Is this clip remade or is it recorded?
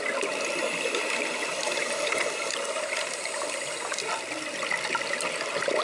recorded